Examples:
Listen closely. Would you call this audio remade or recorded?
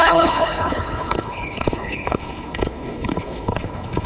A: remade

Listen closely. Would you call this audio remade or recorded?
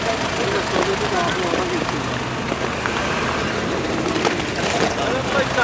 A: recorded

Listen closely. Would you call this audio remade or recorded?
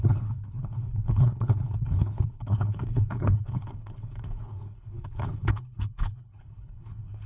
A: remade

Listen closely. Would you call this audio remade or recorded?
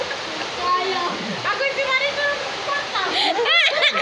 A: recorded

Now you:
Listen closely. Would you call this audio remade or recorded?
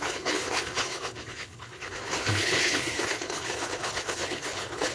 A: remade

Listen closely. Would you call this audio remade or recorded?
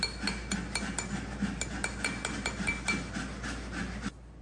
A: recorded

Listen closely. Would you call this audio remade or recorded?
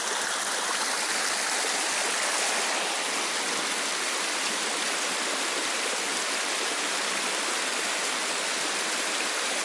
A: recorded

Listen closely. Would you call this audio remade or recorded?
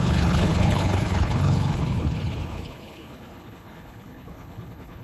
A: remade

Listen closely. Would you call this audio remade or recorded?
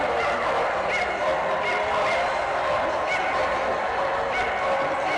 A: recorded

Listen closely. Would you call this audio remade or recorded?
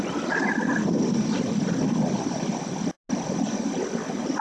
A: recorded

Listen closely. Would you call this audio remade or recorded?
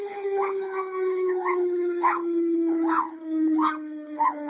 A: remade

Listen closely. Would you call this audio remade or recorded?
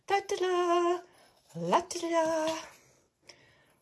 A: recorded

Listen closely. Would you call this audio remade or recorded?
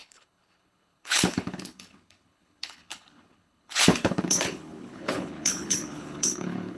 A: remade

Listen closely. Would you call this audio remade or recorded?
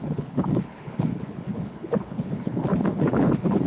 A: remade